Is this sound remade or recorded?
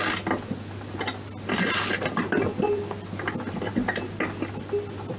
recorded